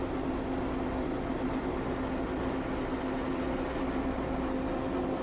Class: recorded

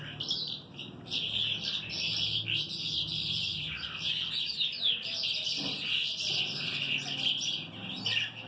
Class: recorded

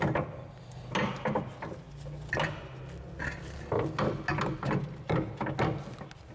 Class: recorded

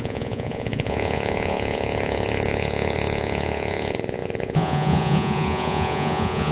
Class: remade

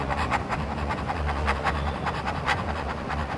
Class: remade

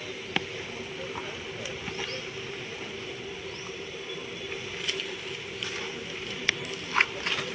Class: recorded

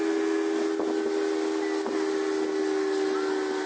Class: recorded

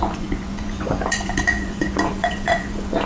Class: remade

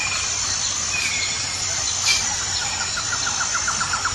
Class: recorded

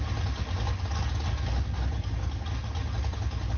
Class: recorded